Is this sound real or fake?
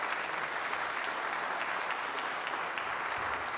real